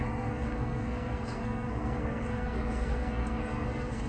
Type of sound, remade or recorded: remade